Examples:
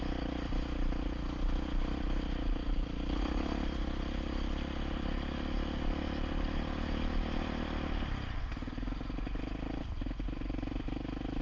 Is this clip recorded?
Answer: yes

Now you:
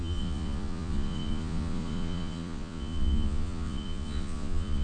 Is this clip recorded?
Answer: no